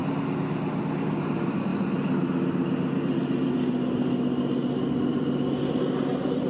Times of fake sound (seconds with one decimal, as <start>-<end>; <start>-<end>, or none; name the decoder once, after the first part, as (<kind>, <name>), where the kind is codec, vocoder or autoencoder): none